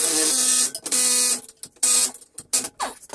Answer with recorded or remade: recorded